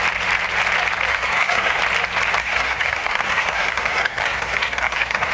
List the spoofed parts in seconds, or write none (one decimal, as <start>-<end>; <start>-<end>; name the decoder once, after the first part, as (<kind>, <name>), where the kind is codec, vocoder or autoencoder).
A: 1.1-1.8 (codec, SNAC); 2.4-5.3